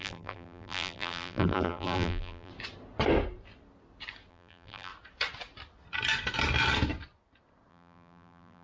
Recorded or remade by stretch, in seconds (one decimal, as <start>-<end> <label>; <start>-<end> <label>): 0.0-2.5 remade; 2.5-4.3 recorded; 4.3-4.9 remade; 4.9-7.7 recorded; 7.7-8.6 remade